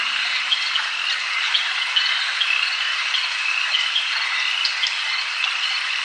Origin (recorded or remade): recorded